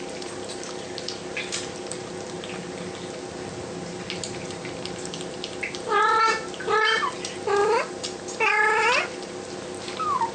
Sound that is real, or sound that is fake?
real